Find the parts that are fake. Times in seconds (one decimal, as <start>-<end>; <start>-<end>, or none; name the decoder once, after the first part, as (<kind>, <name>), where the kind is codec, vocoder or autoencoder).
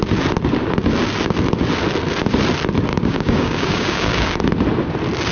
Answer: 2.9-4.4 (codec, DAC)